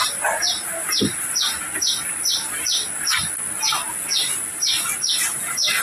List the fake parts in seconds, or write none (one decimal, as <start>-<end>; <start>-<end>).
none